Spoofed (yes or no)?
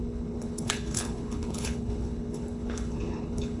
yes